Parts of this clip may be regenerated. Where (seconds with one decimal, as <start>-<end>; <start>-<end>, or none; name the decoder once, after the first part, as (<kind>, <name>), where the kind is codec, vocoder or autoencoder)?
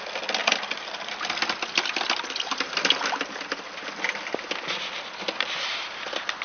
none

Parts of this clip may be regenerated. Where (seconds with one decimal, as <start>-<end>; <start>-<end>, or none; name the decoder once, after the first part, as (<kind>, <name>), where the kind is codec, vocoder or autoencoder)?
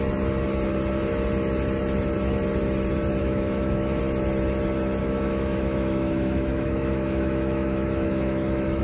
3.2-4.0 (autoencoder, DAC-VAE); 5.0-8.8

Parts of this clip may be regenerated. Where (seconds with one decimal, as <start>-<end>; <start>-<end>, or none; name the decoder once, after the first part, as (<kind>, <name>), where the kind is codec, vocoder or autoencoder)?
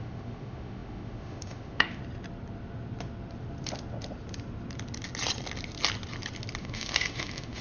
0.0-2.0 (autoencoder, DAC-VAE); 6.6-7.6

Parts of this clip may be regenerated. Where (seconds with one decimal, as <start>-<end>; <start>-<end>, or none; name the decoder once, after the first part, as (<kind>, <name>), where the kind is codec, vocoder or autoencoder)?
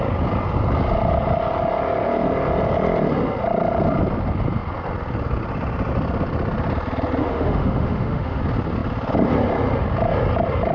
7.2-8.4 (autoencoder, DAC-VAE)